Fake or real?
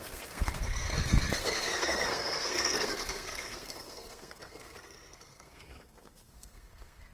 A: fake